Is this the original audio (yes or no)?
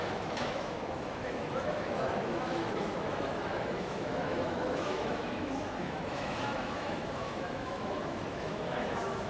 no